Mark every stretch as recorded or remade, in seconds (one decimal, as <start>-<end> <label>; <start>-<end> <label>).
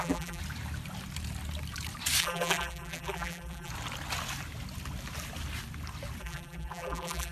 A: 0.0-0.4 remade; 0.4-2.2 recorded; 2.2-3.7 remade; 3.7-6.2 recorded; 6.2-7.3 remade